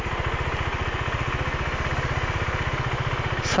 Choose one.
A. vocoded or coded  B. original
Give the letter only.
B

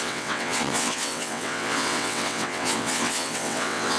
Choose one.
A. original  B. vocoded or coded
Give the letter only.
B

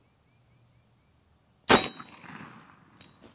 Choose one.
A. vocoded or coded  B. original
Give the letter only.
B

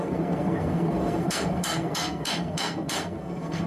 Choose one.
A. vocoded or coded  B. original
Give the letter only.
A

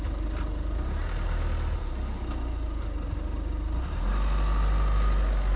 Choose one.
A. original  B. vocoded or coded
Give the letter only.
A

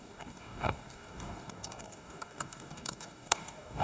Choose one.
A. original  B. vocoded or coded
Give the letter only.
B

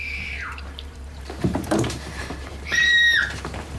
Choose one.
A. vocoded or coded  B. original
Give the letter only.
A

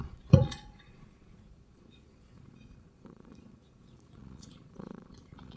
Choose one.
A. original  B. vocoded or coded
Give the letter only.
B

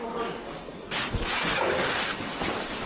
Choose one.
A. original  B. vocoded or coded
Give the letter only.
A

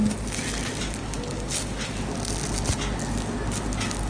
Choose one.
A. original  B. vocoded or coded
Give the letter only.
A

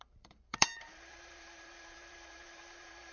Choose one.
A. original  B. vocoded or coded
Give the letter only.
B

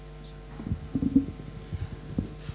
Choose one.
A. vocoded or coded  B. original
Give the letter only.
B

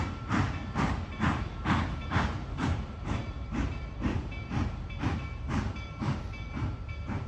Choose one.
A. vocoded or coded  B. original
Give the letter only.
A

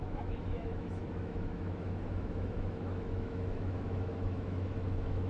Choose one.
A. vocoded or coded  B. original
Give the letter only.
A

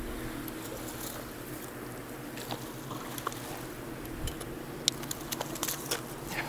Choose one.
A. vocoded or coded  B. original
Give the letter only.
B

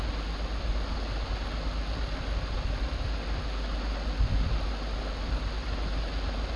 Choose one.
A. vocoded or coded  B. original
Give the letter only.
B